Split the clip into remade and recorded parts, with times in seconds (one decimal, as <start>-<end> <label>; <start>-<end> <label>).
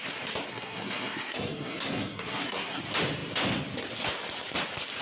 0.0-0.5 recorded; 0.5-2.8 remade; 2.8-5.0 recorded